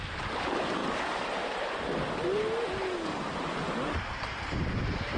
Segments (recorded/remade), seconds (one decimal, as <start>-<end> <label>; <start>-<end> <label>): 0.0-5.2 recorded